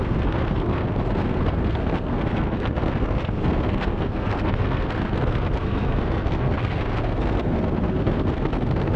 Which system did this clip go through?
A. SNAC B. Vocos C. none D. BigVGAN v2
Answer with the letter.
A